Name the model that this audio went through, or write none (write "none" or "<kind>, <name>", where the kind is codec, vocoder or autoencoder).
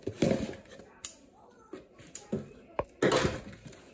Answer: none